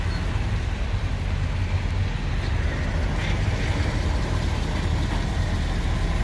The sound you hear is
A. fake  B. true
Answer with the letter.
B